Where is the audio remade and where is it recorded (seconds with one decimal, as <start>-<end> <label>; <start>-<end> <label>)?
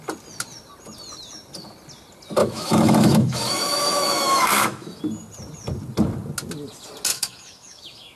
0.0-2.4 recorded; 2.4-5.0 remade; 5.0-7.1 recorded; 7.1-8.2 remade